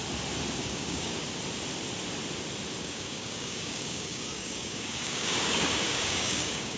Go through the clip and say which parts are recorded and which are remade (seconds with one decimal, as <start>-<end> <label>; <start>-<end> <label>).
0.0-0.6 recorded; 0.6-1.2 remade; 1.2-2.8 recorded; 2.8-6.8 remade